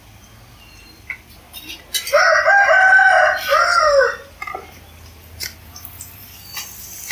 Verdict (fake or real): real